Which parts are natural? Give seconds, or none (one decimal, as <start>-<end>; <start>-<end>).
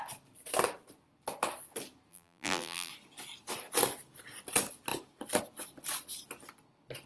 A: 0.0-2.1; 2.9-7.1